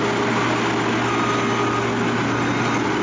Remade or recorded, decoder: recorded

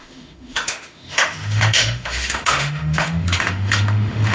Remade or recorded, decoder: remade, autoencoder, DAC-VAE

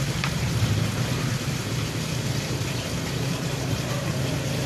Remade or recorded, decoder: remade, vocoder, BigVGAN v2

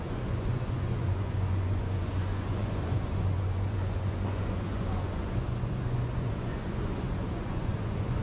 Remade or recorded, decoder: remade, vocoder, Vocos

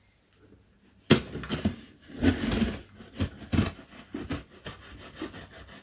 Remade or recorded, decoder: recorded